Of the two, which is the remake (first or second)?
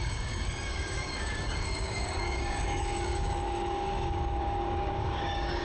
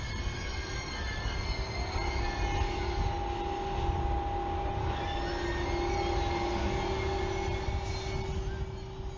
first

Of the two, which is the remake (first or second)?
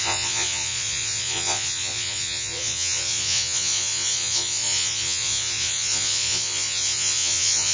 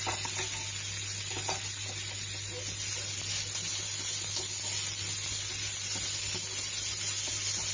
first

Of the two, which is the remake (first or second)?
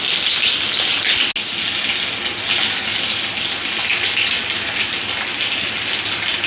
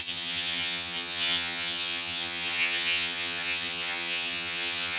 second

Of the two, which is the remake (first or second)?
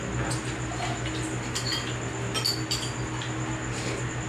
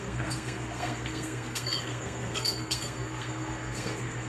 second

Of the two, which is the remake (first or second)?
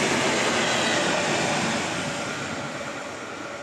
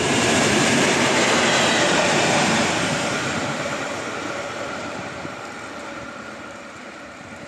second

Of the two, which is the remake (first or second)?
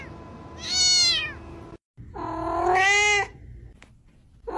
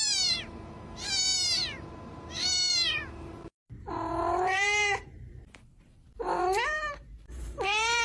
second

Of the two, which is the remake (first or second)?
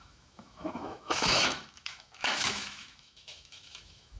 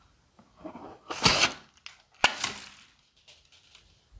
first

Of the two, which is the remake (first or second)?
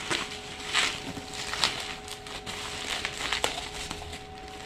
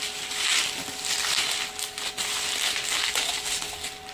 first